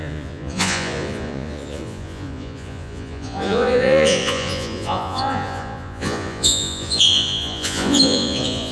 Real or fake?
fake